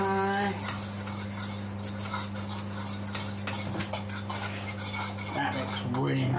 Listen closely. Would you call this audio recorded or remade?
recorded